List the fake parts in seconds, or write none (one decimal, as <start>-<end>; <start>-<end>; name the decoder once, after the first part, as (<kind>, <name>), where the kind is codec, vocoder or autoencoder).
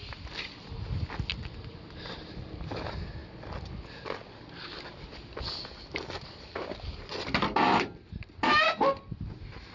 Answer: none